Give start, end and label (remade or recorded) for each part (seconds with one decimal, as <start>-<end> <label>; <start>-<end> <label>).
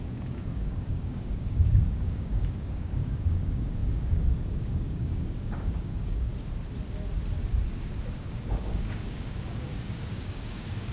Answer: 0.0-6.3 remade; 6.3-8.1 recorded; 8.1-10.9 remade